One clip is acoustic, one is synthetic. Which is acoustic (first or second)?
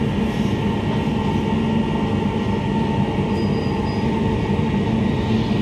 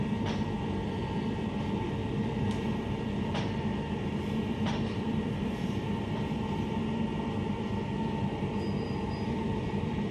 first